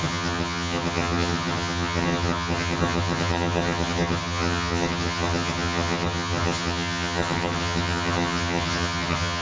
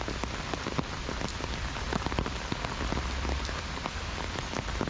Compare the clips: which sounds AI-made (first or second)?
first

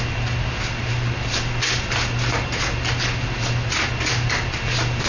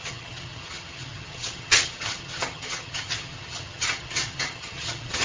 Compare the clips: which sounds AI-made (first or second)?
second